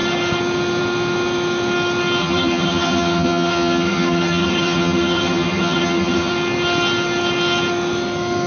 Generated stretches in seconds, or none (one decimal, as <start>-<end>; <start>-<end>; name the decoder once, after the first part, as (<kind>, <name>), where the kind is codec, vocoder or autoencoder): 2.2-6.3 (vocoder, HiFi-GAN)